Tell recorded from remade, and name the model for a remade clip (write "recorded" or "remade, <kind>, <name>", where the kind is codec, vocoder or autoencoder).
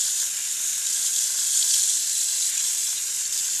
recorded